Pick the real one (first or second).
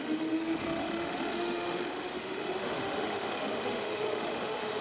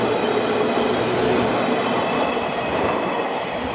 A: second